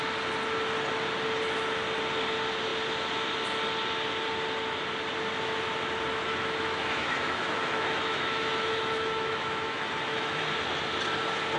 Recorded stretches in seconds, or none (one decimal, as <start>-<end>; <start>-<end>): 0.0-6.4; 10.4-11.6